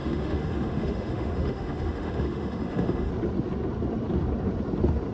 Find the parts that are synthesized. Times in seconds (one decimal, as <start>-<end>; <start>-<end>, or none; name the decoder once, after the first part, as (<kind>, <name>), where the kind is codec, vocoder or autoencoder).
0.0-3.1 (autoencoder, DAC-VAE)